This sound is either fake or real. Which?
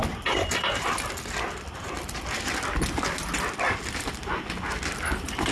real